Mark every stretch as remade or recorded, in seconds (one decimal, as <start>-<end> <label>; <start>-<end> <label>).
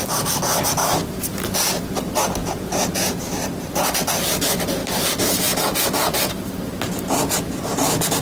0.0-2.4 recorded; 2.4-3.3 remade; 3.3-8.2 recorded